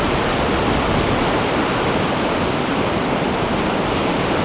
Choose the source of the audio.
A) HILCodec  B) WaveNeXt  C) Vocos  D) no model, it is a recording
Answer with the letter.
D